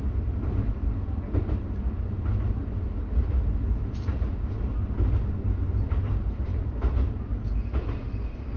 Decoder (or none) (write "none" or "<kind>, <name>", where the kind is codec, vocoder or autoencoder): none